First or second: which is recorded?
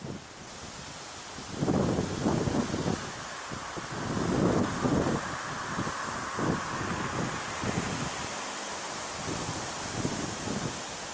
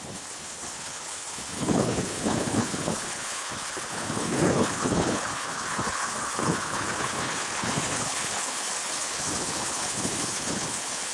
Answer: first